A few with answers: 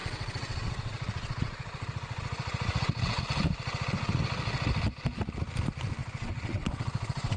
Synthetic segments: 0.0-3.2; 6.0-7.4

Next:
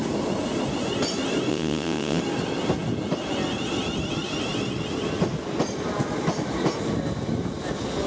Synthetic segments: 1.5-2.2